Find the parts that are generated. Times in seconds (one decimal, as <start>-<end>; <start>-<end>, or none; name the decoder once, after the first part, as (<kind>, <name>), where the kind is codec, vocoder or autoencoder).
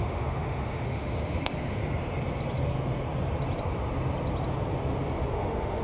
0.0-1.8 (autoencoder, DAC-VAE); 5.3-5.8